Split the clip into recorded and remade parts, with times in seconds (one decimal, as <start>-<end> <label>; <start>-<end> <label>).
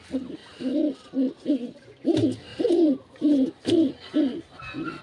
0.0-2.5 recorded; 2.5-3.7 remade; 3.7-5.0 recorded